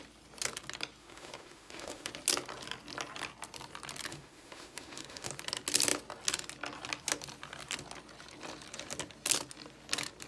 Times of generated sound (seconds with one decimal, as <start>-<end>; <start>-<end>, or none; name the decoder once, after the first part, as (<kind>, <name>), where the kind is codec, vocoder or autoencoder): 1.0-2.1 (autoencoder, DAC-VAE); 4.1-5.3